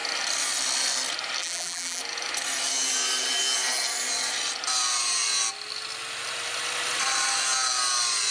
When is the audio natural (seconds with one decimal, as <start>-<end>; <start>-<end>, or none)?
0.0-1.4; 2.0-8.3